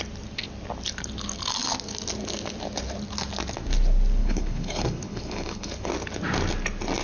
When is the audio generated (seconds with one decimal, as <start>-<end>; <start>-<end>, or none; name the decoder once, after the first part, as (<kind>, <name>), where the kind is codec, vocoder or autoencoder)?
4.2-5.9 (codec, HILCodec)